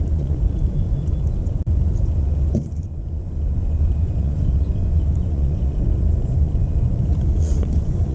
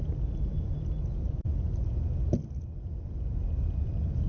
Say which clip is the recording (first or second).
second